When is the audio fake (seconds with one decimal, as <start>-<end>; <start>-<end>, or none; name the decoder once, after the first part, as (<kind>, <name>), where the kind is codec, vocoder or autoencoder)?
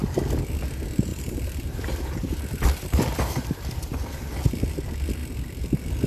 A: 1.1-4.3 (vocoder, BigVGAN v2); 5.2-6.1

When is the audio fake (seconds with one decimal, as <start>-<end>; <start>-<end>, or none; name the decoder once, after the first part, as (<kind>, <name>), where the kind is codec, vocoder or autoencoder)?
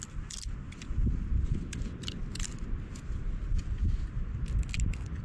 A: 2.2-2.7 (vocoder, BigVGAN v2)